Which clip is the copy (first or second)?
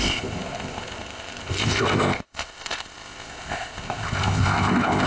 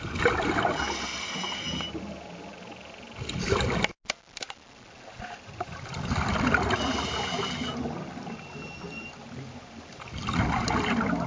first